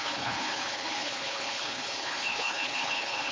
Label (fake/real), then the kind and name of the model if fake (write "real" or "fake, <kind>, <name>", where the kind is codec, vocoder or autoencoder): fake, codec, HILCodec